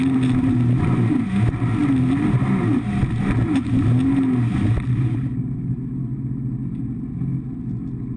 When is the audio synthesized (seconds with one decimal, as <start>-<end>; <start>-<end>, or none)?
none